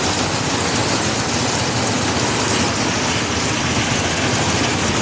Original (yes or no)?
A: yes